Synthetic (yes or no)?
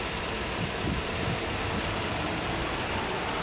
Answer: no